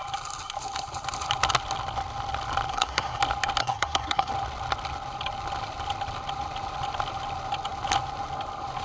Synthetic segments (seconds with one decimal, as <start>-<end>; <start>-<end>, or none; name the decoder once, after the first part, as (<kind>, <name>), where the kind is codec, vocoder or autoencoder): 2.7-3.2 (codec, SNAC); 3.6-4.3